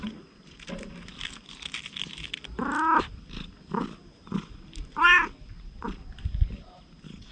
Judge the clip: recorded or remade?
recorded